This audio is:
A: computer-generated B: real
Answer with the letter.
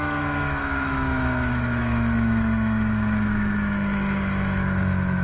A